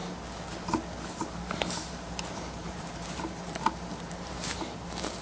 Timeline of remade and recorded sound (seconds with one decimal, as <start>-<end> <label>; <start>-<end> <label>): 0.0-1.1 recorded; 1.1-5.2 remade